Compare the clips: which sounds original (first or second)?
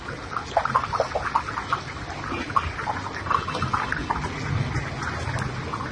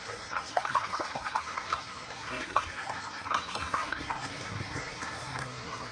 first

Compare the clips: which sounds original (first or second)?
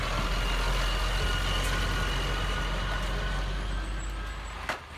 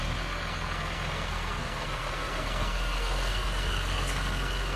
first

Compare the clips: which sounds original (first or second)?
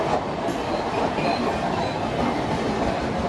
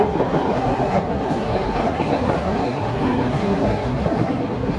first